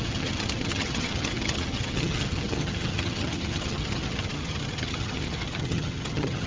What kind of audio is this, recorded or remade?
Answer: remade